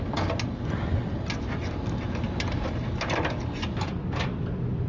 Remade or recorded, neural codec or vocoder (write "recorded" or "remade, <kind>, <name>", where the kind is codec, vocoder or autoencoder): recorded